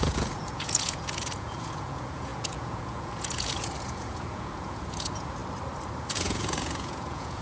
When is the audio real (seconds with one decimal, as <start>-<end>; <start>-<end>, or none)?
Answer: 5.4-6.1